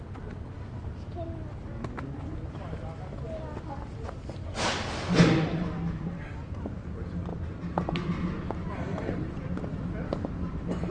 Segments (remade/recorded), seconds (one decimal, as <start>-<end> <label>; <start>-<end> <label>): 0.0-10.9 recorded